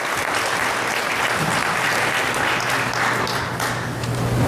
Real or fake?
real